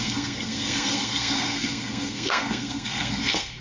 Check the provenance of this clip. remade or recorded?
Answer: remade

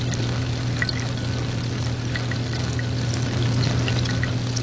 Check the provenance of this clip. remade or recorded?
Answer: recorded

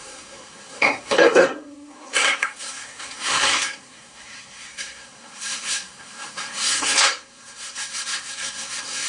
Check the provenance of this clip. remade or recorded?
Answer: remade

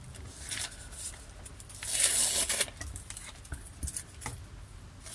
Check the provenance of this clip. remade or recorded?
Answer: recorded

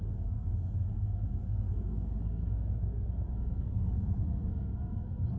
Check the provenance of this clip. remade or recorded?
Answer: remade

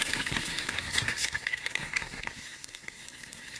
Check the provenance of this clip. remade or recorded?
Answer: remade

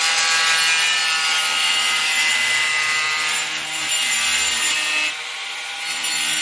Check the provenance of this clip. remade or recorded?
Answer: recorded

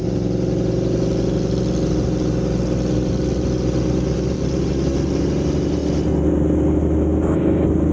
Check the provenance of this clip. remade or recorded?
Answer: recorded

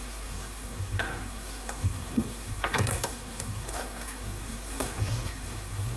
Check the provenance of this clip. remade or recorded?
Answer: remade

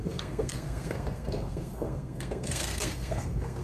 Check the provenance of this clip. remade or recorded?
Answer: remade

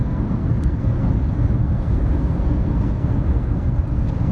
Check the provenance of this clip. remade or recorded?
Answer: remade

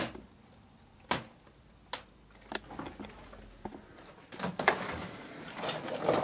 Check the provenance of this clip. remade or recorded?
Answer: recorded